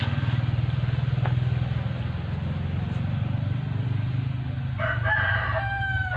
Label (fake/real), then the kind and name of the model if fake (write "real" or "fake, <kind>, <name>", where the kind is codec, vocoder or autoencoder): real